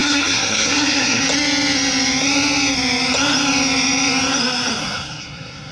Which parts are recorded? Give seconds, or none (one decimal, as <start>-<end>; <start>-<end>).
1.2-4.8